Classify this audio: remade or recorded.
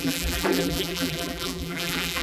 remade